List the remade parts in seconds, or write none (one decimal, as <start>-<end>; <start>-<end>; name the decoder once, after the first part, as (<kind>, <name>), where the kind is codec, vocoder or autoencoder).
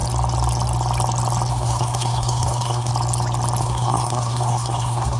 1.5-2.9 (codec, SNAC); 3.6-5.2